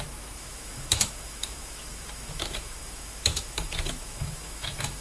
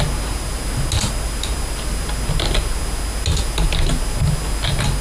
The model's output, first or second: first